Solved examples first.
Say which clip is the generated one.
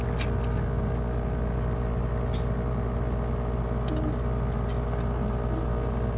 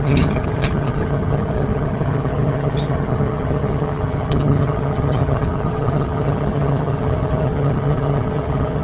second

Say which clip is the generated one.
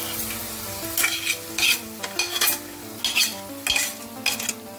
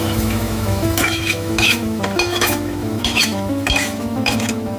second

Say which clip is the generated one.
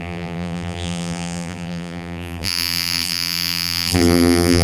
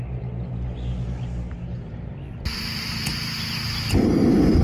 first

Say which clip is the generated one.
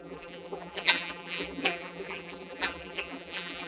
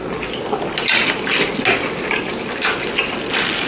first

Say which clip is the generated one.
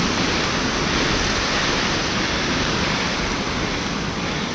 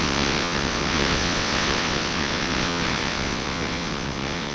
second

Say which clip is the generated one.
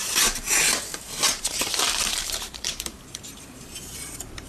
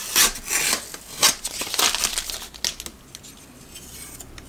first